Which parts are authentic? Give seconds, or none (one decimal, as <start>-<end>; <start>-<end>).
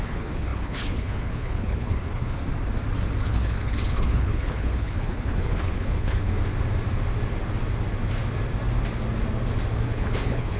2.4-3.2; 6.3-9.8